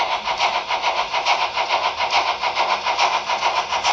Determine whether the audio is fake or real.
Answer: real